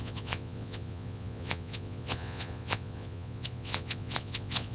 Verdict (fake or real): fake